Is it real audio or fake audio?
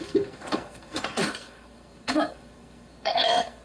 fake